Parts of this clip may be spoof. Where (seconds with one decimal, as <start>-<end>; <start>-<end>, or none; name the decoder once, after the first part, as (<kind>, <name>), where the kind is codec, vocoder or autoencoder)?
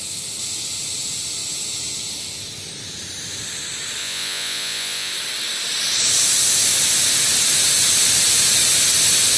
4.0-5.1 (vocoder, Vocos)